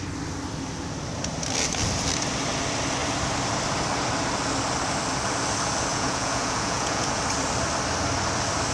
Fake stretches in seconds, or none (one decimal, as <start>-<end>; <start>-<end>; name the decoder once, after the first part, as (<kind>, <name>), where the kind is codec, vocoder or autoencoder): 5.9-7.2 (vocoder, Vocos)